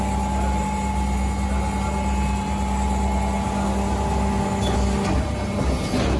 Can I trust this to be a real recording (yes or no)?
yes